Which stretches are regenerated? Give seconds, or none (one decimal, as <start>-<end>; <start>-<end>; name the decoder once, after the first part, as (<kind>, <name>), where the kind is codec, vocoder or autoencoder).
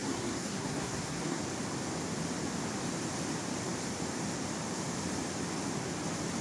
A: 0.0-1.4 (codec, SNAC)